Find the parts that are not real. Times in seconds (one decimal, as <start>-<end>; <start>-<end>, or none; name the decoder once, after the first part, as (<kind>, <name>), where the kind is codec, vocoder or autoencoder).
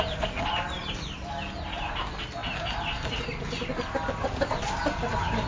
none